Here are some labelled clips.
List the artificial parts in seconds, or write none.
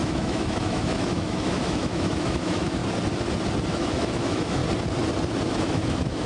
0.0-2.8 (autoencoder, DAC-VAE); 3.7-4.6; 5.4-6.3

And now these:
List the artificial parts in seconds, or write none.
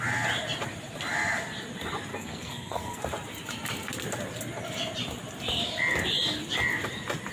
2.1-3.0 (codec, SNAC)